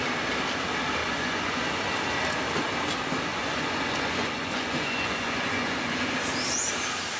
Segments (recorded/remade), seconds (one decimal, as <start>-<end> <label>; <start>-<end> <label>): 0.0-1.0 recorded; 1.0-1.6 remade; 1.6-3.3 recorded; 3.3-6.1 remade; 6.1-7.2 recorded

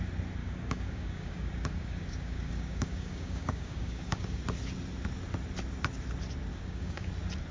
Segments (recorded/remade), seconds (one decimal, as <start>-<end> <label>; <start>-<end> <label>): 0.0-0.4 recorded; 0.4-4.4 remade; 4.4-6.5 recorded; 6.5-7.1 remade; 7.1-7.5 recorded

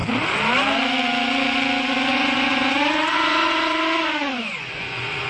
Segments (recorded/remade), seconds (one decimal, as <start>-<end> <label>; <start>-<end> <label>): 0.0-2.1 recorded; 2.1-5.3 remade